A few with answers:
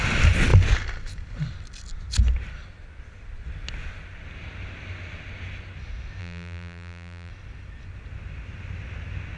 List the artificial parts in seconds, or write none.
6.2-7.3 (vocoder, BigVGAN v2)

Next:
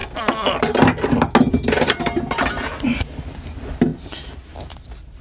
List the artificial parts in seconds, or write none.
none

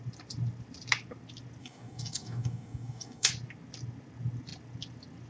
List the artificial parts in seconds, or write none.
1.6-3.3 (codec, DAC)

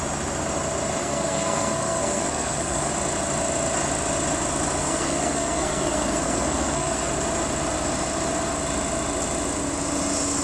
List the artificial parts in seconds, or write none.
1.0-2.9 (codec, SNAC); 4.8-7.1

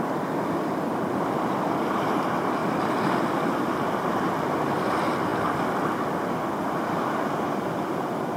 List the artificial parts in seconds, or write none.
none

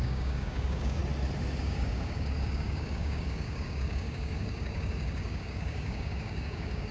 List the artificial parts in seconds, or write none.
0.0-1.0 (codec, DAC); 1.6-6.9

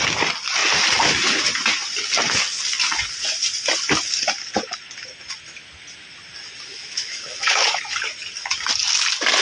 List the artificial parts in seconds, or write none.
6.7-7.8 (autoencoder, DAC-VAE)